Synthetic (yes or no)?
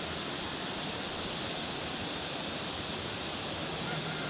no